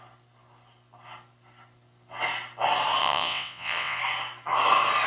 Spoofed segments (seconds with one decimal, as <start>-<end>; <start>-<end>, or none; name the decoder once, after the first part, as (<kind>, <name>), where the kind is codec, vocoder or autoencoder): 3.0-4.0 (vocoder, WaveNeXt)